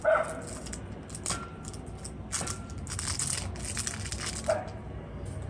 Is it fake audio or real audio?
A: real